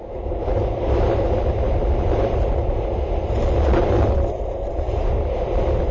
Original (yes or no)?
yes